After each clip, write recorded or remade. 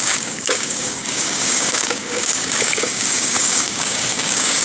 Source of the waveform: remade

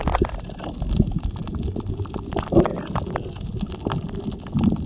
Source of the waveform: recorded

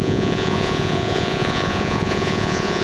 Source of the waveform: remade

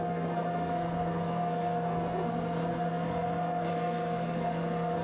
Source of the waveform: remade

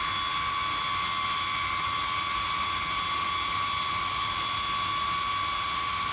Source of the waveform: recorded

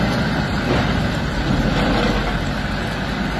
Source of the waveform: recorded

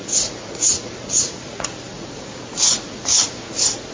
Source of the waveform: remade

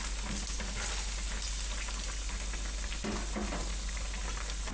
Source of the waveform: recorded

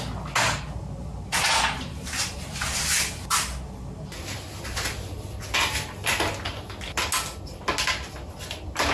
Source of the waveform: recorded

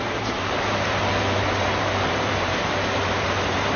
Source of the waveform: remade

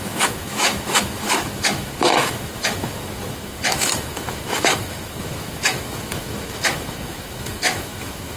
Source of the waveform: remade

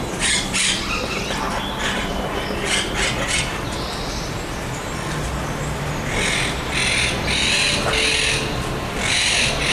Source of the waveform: recorded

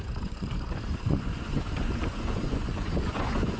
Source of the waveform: remade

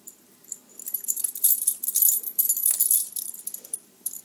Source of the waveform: remade